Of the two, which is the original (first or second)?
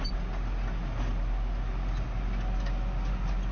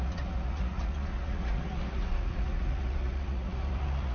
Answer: first